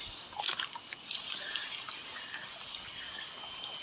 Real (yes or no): yes